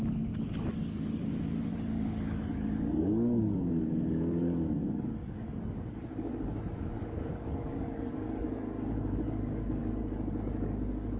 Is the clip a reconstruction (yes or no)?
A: yes